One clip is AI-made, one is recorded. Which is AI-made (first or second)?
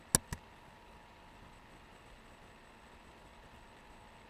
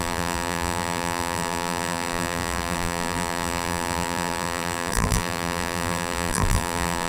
second